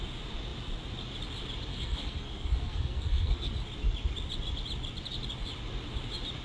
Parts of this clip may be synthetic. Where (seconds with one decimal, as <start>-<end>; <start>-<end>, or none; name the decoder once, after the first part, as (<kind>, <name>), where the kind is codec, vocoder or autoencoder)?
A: 1.7-3.5 (codec, SNAC)